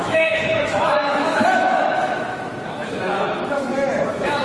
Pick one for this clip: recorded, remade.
remade